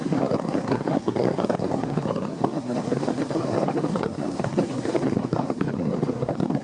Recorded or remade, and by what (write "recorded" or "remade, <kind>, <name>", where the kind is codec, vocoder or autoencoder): remade, codec, SNAC